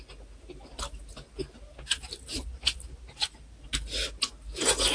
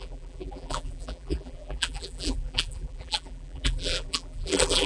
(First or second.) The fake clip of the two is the second